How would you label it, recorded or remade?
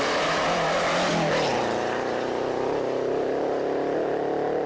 recorded